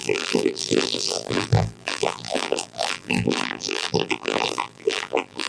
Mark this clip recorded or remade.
remade